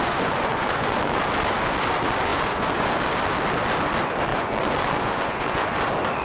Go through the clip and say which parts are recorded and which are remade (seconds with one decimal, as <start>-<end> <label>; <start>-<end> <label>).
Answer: 0.0-1.2 remade; 1.2-2.3 recorded; 2.3-2.9 remade; 2.9-4.3 recorded; 4.3-5.7 remade; 5.7-6.2 recorded